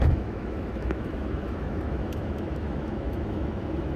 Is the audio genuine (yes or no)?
no